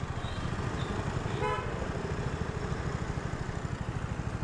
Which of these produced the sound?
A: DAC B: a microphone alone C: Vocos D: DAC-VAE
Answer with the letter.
B